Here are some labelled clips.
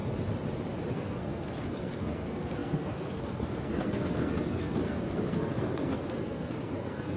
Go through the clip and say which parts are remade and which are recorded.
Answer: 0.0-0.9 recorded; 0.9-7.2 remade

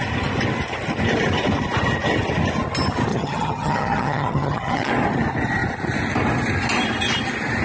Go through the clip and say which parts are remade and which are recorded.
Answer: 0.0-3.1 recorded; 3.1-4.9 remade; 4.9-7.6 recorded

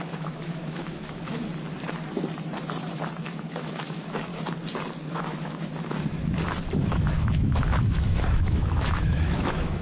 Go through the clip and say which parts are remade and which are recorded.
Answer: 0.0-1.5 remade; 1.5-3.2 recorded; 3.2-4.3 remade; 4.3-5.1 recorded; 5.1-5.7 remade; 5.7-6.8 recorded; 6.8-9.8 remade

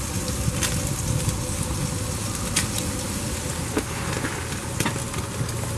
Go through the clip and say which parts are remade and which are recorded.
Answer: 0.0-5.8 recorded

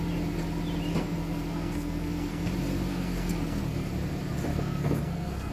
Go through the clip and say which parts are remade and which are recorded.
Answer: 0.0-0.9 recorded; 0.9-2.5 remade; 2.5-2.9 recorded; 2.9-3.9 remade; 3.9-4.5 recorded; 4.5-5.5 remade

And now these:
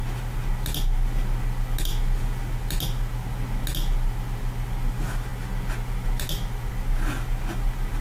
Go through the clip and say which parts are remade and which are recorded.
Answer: 0.0-8.0 recorded